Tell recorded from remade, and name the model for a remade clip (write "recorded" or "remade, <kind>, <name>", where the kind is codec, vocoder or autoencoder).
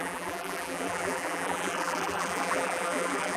remade, vocoder, BigVGAN v2